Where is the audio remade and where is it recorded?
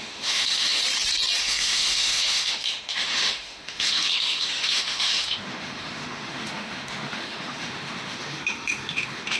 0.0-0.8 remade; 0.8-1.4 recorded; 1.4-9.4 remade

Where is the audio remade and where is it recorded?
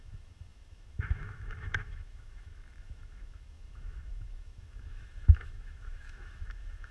0.0-6.9 remade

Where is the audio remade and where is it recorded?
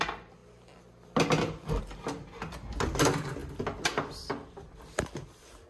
0.0-5.7 recorded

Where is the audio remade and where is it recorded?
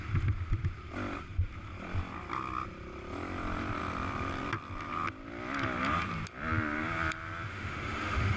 0.0-7.5 recorded; 7.5-8.4 remade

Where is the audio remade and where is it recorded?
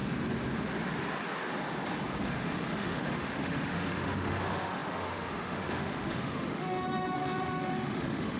0.0-2.2 recorded; 2.2-8.4 remade